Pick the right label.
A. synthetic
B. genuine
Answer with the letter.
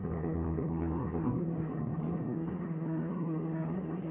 A